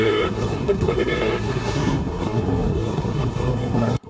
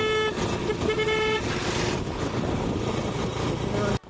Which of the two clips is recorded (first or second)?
second